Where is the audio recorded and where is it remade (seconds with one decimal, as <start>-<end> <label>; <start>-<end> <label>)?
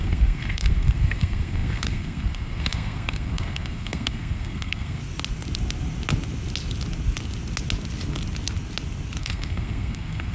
0.0-5.0 remade; 5.0-9.2 recorded; 9.2-10.3 remade